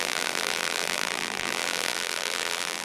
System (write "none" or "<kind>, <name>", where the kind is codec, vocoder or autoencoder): vocoder, BigVGAN v2